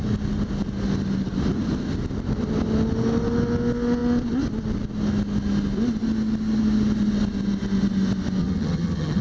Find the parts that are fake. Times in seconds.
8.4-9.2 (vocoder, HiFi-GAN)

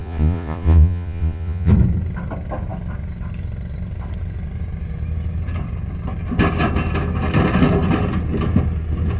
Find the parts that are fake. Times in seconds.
0.0-1.7 (vocoder, Vocos)

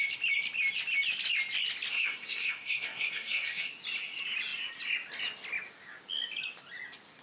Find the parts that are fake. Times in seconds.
1.9-3.7 (codec, SNAC)

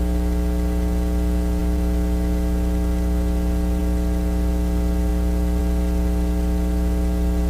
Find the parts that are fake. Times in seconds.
none